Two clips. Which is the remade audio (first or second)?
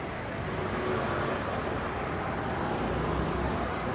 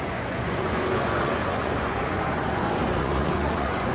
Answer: second